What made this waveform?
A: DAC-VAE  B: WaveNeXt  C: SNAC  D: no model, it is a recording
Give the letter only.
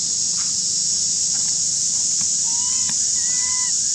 D